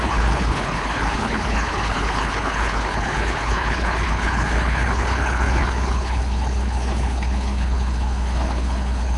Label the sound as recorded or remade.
remade